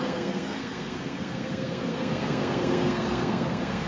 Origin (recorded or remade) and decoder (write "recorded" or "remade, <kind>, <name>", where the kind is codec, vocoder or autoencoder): remade, codec, SNAC